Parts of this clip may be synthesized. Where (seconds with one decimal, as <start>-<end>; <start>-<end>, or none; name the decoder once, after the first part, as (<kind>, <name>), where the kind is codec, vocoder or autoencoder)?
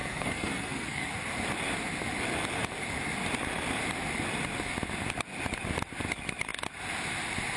0.0-1.1 (codec, SNAC)